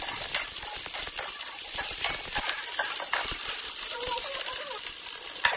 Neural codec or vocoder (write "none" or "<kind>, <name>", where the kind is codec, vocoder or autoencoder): none